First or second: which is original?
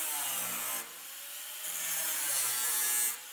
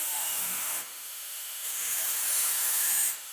first